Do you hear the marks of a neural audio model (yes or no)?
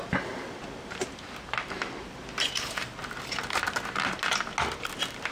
no